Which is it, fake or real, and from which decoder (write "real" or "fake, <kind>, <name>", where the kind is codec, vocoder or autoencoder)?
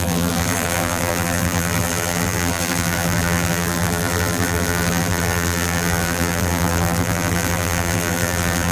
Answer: fake, vocoder, BigVGAN v2